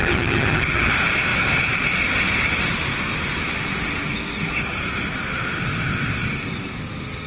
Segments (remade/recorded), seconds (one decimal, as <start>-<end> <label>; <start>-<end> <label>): 0.0-0.9 remade; 0.9-7.3 recorded